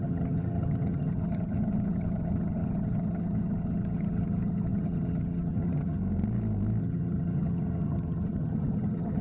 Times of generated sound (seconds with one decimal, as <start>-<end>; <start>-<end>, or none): 0.0-6.0; 6.8-9.2

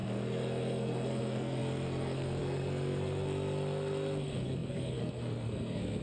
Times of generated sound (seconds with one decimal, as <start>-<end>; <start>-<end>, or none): 0.0-6.0

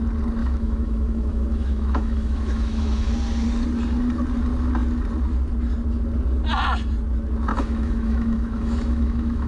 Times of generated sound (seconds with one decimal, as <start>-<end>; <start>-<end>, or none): 0.4-3.1; 7.5-9.5

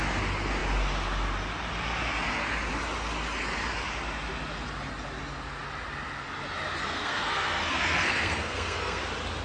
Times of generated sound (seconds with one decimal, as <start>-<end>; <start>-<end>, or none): 6.8-9.0

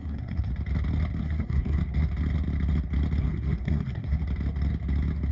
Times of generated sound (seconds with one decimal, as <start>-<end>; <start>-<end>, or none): 0.0-0.5; 1.2-1.8; 3.2-4.2